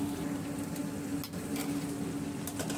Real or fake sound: real